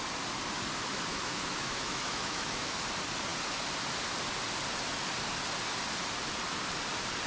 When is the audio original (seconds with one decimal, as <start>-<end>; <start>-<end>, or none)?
0.0-1.1; 2.8-7.3